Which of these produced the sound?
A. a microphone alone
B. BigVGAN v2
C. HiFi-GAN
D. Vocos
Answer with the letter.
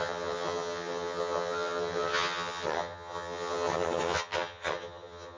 C